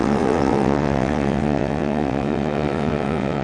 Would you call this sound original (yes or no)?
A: no